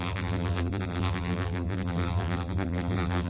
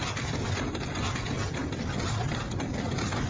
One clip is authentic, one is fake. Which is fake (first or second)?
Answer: first